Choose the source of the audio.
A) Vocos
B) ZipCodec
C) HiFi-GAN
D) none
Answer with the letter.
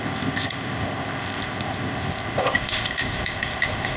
B